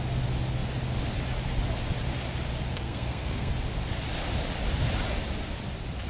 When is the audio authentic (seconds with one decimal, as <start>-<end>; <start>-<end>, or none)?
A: 0.0-2.7; 3.5-6.1